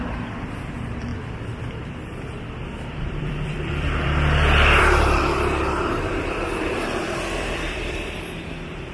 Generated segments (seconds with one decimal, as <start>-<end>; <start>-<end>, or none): 0.0-8.9